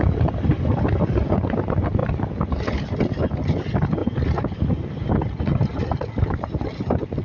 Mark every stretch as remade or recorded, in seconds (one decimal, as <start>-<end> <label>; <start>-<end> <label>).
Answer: 0.0-7.2 recorded